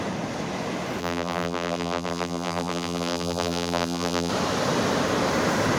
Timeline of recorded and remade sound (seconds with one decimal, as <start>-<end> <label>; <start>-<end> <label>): 0.0-1.0 recorded; 1.0-4.3 remade; 4.3-5.8 recorded